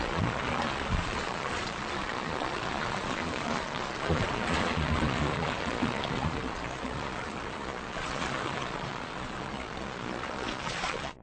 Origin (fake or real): fake